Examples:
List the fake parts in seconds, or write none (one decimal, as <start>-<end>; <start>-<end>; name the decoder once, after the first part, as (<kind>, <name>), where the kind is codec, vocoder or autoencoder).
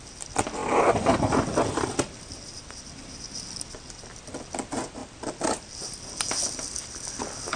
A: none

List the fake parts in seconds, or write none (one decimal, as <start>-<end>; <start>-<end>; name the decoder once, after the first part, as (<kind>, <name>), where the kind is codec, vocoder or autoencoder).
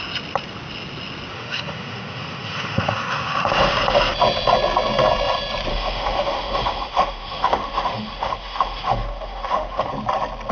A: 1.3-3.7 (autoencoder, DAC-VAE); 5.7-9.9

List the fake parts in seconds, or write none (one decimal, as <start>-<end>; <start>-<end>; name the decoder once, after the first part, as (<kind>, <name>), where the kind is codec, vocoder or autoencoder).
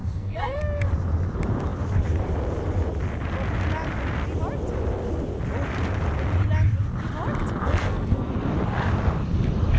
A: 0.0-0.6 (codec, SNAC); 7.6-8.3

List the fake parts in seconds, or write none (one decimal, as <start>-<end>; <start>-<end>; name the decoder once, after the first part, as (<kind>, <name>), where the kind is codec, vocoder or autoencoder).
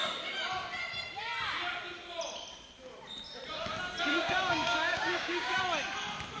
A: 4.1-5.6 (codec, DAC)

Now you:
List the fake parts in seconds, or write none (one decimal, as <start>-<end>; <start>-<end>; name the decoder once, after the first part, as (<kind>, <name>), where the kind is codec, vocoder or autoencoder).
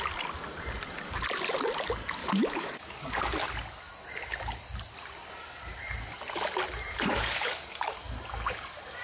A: 2.2-3.1 (codec, DAC); 6.9-7.8